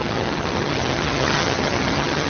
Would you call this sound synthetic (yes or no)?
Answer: yes